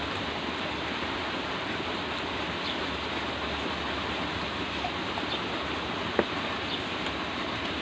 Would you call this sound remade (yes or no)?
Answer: no